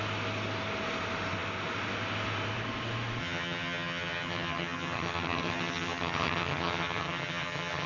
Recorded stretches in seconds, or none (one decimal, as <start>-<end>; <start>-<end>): 0.0-3.2